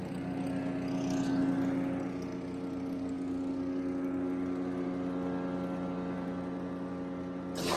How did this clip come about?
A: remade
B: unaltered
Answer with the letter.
B